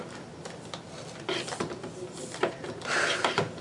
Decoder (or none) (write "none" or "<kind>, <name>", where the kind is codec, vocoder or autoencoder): none